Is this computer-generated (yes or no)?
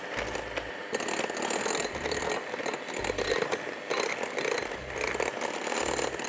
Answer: no